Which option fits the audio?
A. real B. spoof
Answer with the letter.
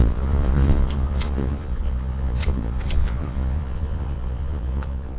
B